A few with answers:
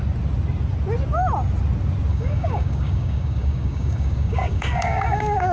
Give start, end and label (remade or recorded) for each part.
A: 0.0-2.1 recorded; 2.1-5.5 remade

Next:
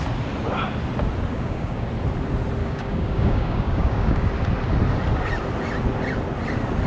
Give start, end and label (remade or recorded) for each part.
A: 0.0-1.3 recorded; 1.3-1.9 remade; 1.9-2.6 recorded; 2.6-4.3 remade; 4.3-6.9 recorded

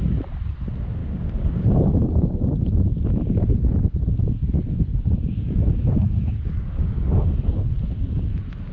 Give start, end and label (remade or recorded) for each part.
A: 0.0-1.0 recorded; 1.0-2.5 remade; 2.5-4.9 recorded; 4.9-7.2 remade; 7.2-8.7 recorded